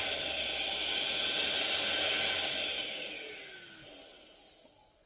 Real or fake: real